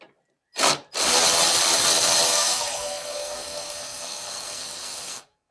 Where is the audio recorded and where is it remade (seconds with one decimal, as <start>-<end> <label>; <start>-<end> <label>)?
0.0-2.3 recorded; 2.3-5.5 remade

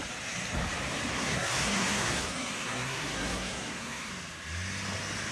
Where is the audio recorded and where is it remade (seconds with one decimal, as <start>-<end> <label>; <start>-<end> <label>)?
0.0-1.1 recorded; 1.1-4.1 remade; 4.1-5.3 recorded

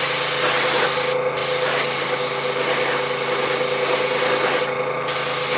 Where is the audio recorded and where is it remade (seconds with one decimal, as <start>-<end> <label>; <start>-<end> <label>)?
0.0-5.6 recorded

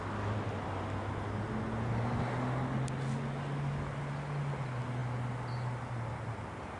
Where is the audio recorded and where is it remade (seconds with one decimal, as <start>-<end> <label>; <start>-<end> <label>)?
0.0-6.8 recorded